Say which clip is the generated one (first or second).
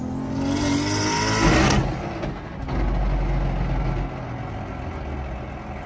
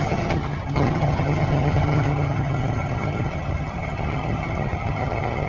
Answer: second